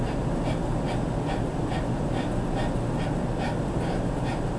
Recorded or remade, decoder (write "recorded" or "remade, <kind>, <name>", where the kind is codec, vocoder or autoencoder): recorded